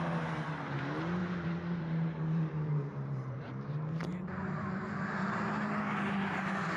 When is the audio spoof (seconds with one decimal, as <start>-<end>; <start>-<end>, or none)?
1.2-4.7